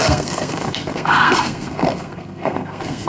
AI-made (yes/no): yes